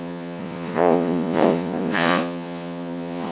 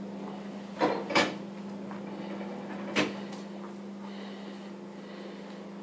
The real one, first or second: second